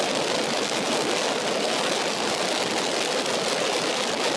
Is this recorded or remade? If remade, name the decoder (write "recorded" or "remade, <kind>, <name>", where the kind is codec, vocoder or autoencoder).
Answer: recorded